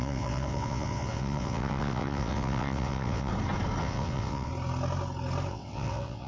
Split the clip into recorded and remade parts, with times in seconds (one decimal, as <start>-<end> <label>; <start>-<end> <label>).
0.0-3.3 remade; 3.3-3.8 recorded; 3.8-4.5 remade; 4.5-5.5 recorded; 5.5-6.3 remade